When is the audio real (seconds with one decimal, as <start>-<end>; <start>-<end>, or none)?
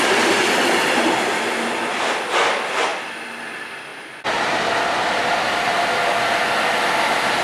0.0-7.4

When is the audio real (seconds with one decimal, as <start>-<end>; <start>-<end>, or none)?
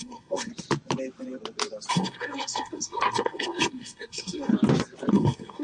0.5-1.9; 4.5-5.1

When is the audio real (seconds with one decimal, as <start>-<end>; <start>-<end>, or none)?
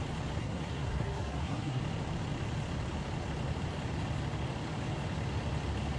0.0-0.4; 1.8-6.0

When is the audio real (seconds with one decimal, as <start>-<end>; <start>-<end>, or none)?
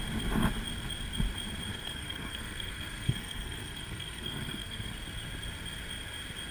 0.0-1.7; 4.9-6.5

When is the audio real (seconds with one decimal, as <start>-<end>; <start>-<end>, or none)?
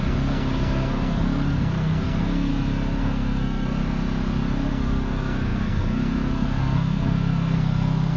2.5-3.0; 3.8-4.7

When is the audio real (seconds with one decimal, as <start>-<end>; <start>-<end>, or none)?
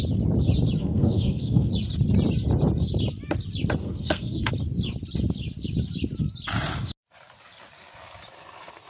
0.0-0.8; 1.7-3.8; 4.5-8.9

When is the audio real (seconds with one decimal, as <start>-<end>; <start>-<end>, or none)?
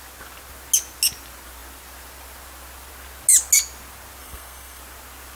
0.0-4.2; 4.8-5.3